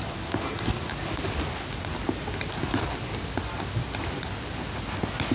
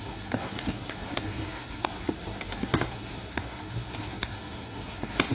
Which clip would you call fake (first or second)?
second